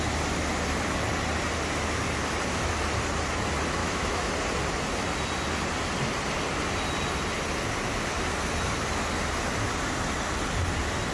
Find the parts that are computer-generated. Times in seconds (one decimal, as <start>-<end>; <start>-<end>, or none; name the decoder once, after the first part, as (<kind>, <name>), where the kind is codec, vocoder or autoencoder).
3.8-4.3 (autoencoder, DAC-VAE)